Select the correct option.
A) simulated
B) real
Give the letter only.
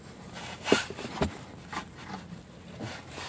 B